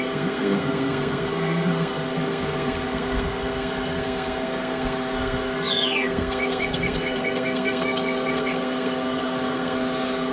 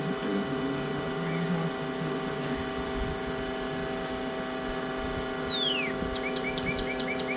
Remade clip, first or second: first